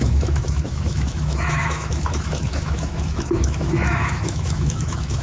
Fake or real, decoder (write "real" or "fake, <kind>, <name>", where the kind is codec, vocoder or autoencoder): fake, autoencoder, DAC-VAE